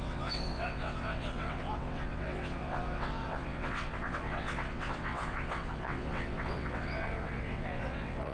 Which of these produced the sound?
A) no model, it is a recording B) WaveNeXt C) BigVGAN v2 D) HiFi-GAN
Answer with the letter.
B